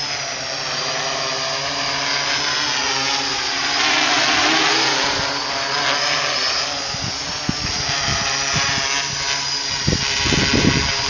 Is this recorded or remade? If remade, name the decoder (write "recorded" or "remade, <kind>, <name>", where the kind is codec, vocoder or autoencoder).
recorded